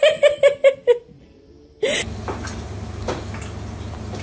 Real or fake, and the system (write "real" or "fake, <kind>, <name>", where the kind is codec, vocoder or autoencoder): real